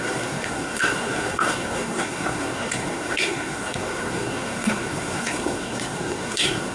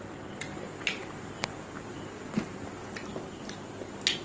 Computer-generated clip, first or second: first